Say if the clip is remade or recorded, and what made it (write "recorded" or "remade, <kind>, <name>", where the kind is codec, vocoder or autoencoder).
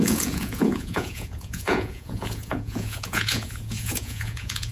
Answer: remade, vocoder, Vocos